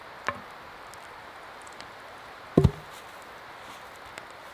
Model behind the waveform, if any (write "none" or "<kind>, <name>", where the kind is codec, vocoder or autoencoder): none